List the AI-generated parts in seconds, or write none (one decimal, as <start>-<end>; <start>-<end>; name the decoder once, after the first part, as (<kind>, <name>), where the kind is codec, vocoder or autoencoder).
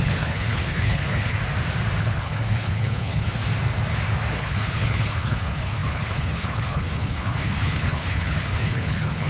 0.0-1.4 (codec, HILCodec); 2.0-3.4; 4.3-9.3